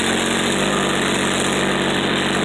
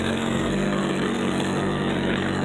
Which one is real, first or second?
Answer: first